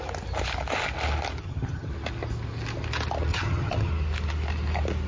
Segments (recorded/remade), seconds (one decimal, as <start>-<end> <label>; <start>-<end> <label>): 0.0-1.4 recorded; 1.4-1.9 remade; 1.9-3.3 recorded; 3.3-3.9 remade; 3.9-5.1 recorded